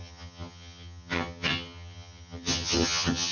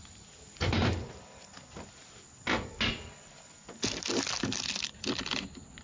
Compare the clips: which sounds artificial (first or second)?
first